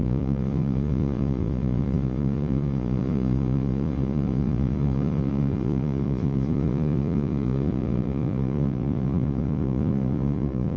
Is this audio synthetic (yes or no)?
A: yes